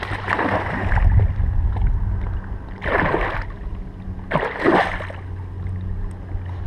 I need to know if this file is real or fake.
real